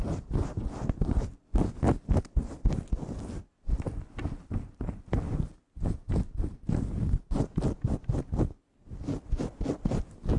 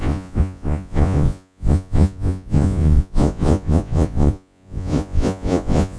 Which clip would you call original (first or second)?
first